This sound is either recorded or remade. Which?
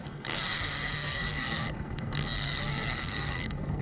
remade